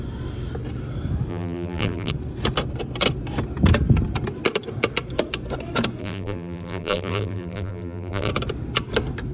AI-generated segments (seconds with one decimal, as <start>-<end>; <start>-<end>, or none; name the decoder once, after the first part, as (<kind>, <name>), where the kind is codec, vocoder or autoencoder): 1.3-2.1 (vocoder, BigVGAN v2); 6.0-8.3